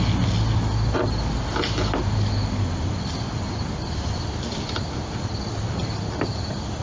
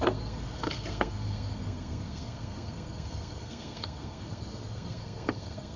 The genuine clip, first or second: first